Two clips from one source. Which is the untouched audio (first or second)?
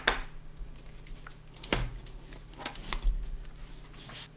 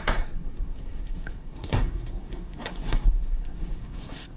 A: first